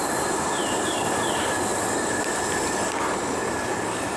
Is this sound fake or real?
real